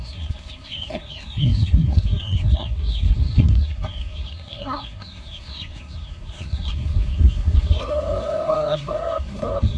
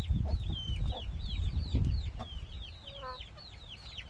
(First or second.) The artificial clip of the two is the first